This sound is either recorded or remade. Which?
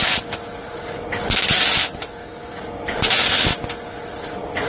recorded